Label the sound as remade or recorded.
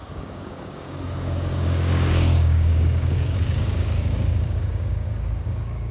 remade